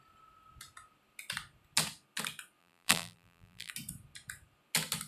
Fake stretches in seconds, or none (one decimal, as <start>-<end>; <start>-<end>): 2.6-3.7